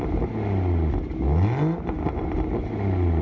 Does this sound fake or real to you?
real